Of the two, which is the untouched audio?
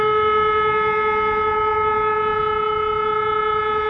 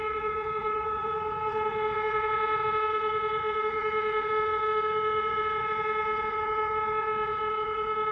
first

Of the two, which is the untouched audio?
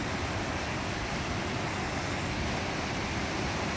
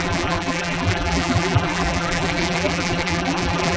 first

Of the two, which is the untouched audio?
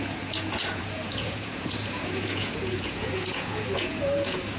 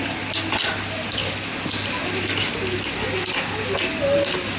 second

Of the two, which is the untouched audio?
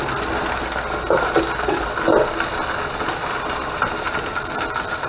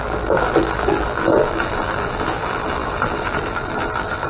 first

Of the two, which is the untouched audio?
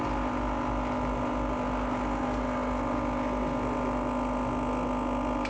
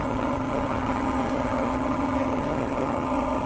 first